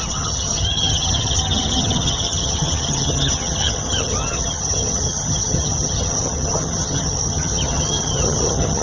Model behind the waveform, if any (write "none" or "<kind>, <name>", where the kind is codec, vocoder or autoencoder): vocoder, HiFi-GAN